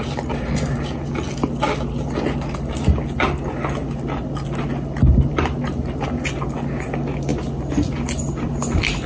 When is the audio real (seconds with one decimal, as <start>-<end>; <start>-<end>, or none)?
0.0-4.7; 6.3-9.1

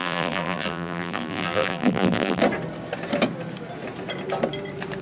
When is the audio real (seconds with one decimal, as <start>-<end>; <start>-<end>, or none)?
2.4-5.0

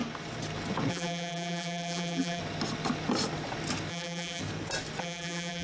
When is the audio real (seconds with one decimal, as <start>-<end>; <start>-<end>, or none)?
0.0-0.9; 2.4-3.9; 4.4-5.0

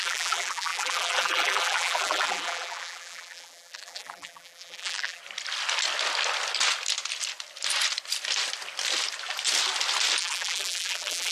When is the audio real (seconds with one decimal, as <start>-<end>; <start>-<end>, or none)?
5.2-10.2

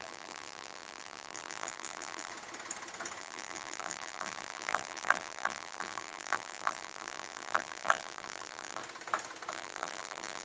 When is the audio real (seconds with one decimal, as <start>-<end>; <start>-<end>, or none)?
2.3-3.2; 8.8-9.5

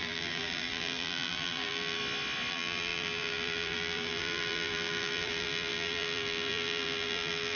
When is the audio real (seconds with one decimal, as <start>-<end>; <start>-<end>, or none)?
2.0-2.5